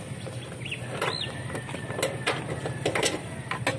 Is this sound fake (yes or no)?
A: no